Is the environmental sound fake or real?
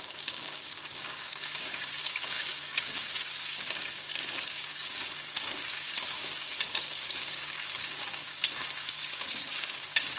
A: fake